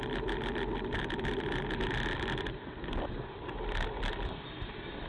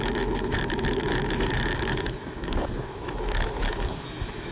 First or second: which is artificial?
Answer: second